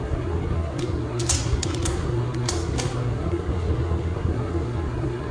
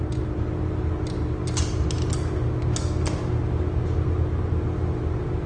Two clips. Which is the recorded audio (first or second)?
second